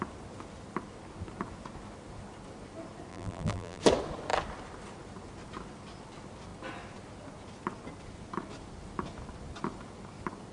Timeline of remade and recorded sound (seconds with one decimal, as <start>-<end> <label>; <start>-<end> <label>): 0.0-3.1 recorded; 3.1-3.8 remade; 3.8-10.5 recorded